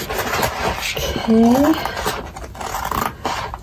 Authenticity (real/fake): real